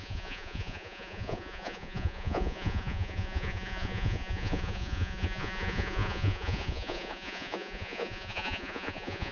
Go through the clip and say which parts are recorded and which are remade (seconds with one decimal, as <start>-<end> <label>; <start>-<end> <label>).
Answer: 0.0-9.3 remade

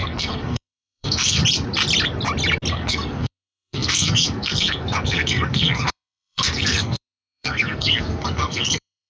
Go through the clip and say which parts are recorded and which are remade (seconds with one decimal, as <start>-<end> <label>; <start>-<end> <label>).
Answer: 0.0-1.4 remade; 1.4-2.7 recorded; 2.7-9.1 remade

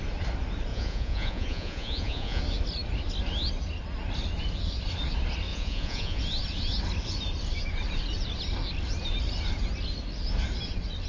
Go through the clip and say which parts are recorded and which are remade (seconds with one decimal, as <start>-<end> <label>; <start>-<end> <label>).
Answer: 0.0-0.7 recorded; 0.7-2.4 remade; 2.4-5.5 recorded; 5.5-6.2 remade; 6.2-11.1 recorded

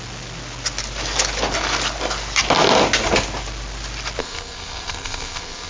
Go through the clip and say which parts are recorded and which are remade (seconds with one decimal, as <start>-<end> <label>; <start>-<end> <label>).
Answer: 0.0-4.2 recorded; 4.2-5.7 remade

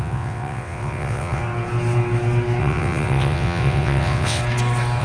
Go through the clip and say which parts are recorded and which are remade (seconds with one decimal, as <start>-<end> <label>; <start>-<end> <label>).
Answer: 0.0-1.4 remade; 1.4-2.6 recorded; 2.6-4.4 remade; 4.4-5.0 recorded